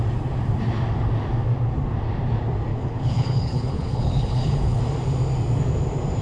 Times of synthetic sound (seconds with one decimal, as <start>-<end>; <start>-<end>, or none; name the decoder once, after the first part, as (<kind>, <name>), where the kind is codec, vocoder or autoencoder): 2.7-4.8 (codec, HILCodec)